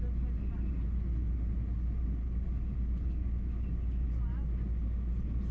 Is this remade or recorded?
recorded